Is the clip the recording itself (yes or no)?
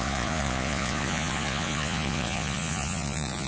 no